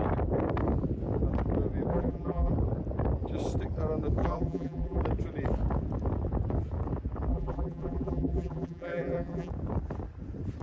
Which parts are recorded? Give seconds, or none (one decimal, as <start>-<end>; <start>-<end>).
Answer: 0.0-1.9; 2.5-4.2; 5.0-7.3; 9.5-10.6